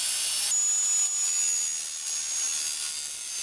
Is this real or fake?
real